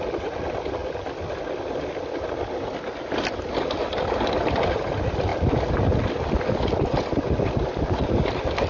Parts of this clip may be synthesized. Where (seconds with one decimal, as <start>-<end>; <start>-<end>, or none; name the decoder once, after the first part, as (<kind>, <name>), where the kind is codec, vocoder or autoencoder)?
none